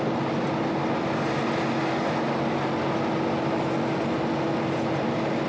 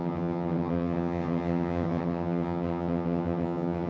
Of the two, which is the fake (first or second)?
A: second